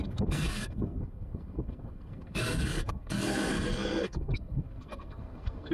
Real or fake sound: fake